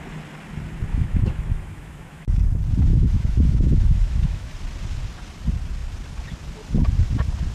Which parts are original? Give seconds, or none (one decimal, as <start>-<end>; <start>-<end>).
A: 0.0-0.9; 2.4-2.9; 4.5-7.5